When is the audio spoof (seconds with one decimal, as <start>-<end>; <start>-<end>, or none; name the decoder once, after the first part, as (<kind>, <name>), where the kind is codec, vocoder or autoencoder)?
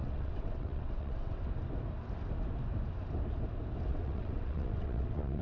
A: 0.0-1.4 (vocoder, WaveNeXt); 3.9-5.4